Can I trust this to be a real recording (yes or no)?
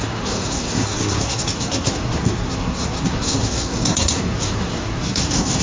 no